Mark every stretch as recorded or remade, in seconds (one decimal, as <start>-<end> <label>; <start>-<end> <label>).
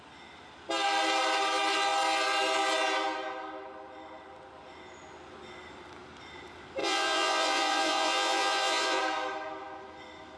0.0-6.8 recorded; 6.8-9.0 remade; 9.0-10.4 recorded